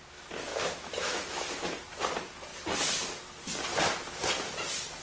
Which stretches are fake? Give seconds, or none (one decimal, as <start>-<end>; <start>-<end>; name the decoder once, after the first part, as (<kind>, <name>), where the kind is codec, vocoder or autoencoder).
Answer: 0.5-1.7 (autoencoder, DAC-VAE)